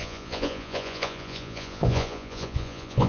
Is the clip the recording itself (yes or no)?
no